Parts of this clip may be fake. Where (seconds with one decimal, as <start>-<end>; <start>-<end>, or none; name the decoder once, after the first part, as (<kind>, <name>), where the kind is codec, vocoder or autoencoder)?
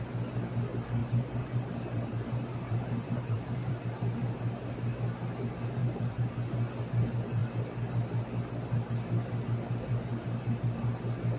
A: 1.0-3.7 (vocoder, BigVGAN v2); 5.8-6.3